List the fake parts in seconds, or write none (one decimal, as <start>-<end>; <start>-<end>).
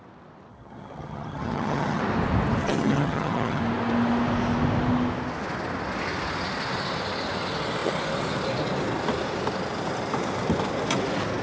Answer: 0.5-2.0; 2.6-3.6